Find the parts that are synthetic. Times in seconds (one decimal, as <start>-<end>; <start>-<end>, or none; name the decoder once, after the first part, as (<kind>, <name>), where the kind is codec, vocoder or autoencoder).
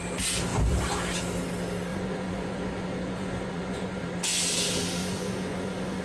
1.9-4.0 (vocoder, Vocos); 5.0-6.0